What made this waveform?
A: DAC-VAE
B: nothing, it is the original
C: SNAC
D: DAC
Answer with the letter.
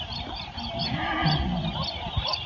B